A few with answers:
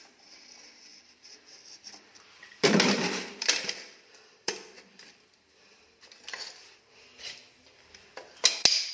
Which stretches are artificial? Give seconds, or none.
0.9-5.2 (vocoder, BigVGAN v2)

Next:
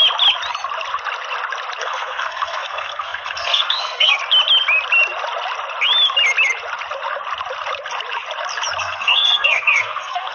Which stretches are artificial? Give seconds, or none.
1.8-4.2 (codec, SNAC); 8.8-10.3

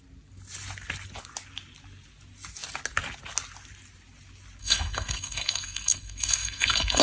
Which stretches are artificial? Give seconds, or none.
4.6-7.0 (codec, SNAC)

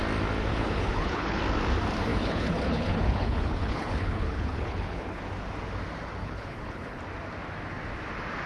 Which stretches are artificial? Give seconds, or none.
0.5-1.4 (codec, HILCodec); 2.1-5.2; 6.2-7.0